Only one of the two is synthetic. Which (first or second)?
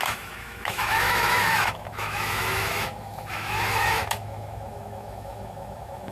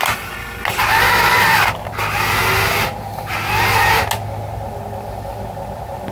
first